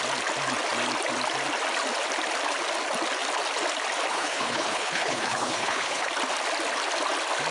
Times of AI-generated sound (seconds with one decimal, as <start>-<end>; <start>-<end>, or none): 4.1-6.1